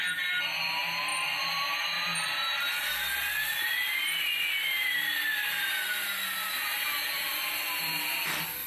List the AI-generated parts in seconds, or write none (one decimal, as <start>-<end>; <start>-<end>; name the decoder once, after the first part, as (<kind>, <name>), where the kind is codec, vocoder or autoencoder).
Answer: none